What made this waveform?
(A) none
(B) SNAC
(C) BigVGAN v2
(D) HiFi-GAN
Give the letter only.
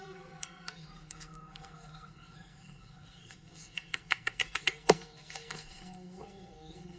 B